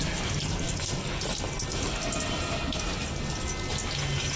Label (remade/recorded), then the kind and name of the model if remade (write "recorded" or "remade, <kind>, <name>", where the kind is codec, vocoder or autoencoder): recorded